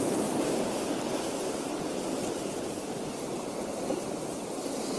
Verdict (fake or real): real